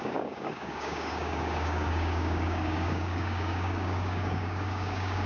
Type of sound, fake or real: fake